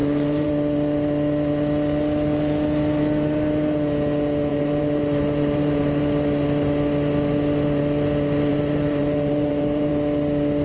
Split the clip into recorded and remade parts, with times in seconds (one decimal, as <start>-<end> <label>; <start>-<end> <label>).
0.0-0.5 remade; 0.5-4.5 recorded; 4.5-6.0 remade; 6.0-8.5 recorded; 8.5-9.9 remade; 9.9-10.6 recorded